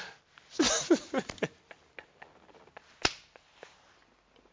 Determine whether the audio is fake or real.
real